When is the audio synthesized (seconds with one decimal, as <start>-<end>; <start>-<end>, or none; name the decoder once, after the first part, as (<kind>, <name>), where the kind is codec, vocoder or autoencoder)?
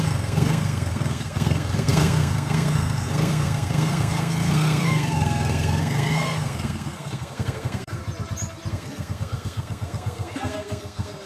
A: 0.0-8.0 (codec, SNAC); 8.7-11.3